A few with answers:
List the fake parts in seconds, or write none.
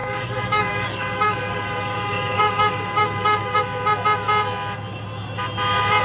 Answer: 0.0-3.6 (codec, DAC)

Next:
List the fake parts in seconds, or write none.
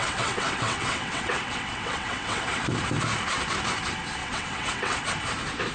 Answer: 0.0-2.7 (vocoder, WaveNeXt); 4.2-5.0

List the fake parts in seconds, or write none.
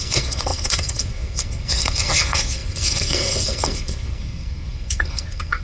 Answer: 0.0-5.6 (codec, SNAC)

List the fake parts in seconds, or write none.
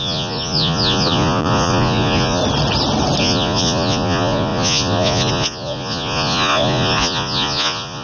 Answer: 0.0-2.4 (vocoder, Vocos); 3.2-8.0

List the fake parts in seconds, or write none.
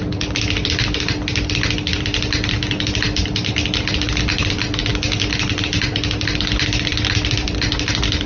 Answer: none